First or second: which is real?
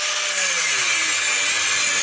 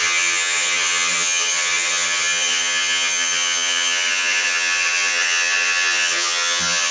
first